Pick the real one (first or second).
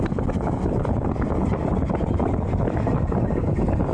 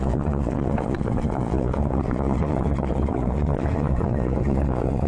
first